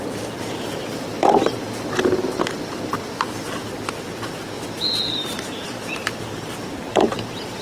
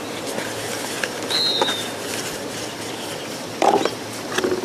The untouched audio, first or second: second